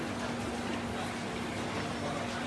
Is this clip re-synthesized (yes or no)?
no